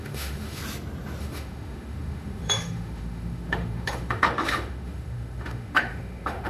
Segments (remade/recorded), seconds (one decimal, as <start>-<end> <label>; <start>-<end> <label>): 0.0-0.6 remade; 0.6-1.2 recorded; 1.2-6.5 remade